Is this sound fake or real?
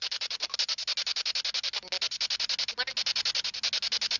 real